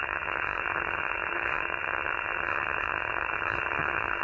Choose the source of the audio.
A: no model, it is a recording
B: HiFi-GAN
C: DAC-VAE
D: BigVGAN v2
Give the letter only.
B